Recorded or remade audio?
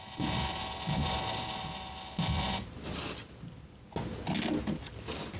recorded